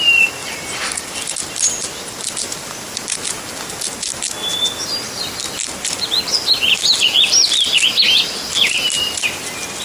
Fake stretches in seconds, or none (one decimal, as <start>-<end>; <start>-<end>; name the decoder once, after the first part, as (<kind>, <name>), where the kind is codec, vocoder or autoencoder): 0.4-3.7 (vocoder, BigVGAN v2); 4.5-9.8